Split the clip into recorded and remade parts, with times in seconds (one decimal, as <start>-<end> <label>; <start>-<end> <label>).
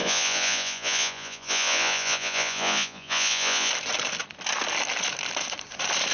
0.0-3.7 remade; 3.7-6.1 recorded